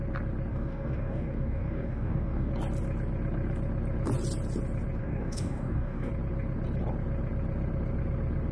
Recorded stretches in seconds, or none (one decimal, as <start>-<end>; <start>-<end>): 0.0-0.5; 2.5-5.0; 6.1-8.5